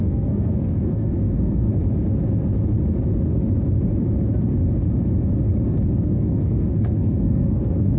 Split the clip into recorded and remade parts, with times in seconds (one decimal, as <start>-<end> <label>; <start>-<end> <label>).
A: 0.0-1.7 remade; 1.7-6.0 recorded; 6.0-8.0 remade